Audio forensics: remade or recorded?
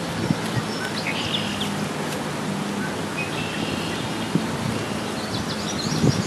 recorded